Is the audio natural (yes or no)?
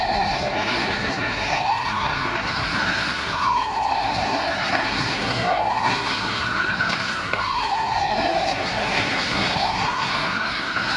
no